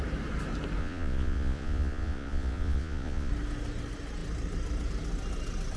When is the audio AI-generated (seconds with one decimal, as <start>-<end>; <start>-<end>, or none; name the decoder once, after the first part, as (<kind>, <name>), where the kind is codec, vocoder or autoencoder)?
0.8-3.3 (vocoder, Vocos)